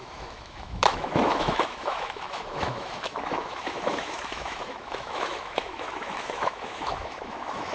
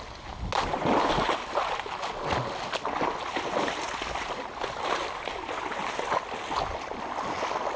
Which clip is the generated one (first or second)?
first